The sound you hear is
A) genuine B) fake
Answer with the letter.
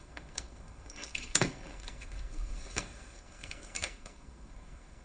B